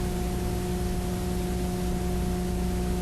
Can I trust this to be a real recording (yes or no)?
yes